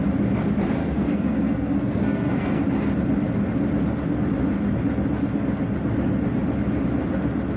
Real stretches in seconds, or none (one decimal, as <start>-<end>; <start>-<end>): 0.0-0.8; 2.6-7.6